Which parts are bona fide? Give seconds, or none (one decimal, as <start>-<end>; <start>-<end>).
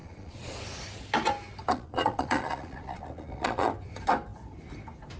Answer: 0.6-1.6; 3.7-5.2